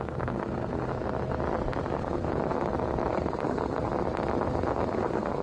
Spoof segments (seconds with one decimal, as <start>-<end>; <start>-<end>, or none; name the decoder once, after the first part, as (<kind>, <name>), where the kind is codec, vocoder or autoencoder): 0.0-0.9 (codec, SNAC); 1.8-2.5; 3.1-3.9; 4.9-5.4